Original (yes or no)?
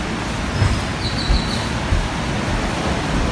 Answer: yes